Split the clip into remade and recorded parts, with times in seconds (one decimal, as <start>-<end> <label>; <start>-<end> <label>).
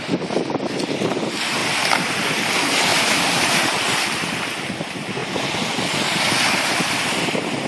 0.0-7.7 recorded